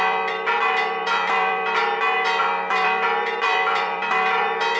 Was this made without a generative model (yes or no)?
no